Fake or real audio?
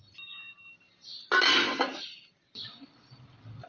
real